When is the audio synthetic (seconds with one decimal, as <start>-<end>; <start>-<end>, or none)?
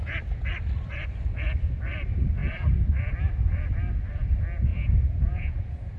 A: 4.7-6.0